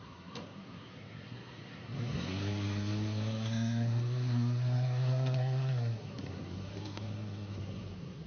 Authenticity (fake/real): fake